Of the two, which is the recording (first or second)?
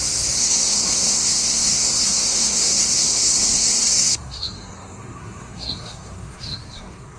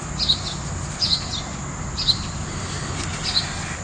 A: second